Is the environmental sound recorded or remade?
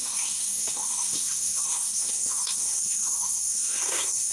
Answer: remade